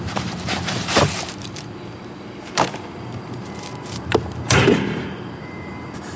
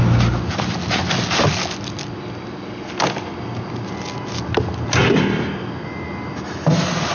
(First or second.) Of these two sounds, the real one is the second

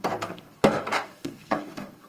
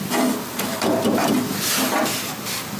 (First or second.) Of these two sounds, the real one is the second